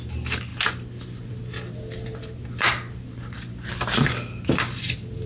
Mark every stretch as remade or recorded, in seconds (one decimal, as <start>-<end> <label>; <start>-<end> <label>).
0.0-5.3 recorded